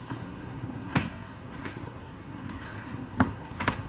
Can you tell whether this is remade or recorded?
remade